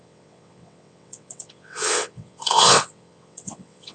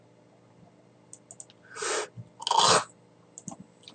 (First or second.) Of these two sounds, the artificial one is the first